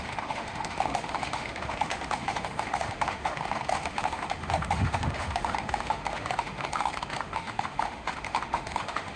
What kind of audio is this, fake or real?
fake